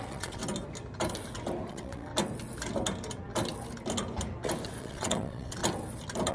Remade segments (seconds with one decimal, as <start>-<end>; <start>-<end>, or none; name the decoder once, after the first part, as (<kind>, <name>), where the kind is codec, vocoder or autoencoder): 0.0-0.4 (vocoder, WaveNeXt); 1.7-2.1; 4.8-5.6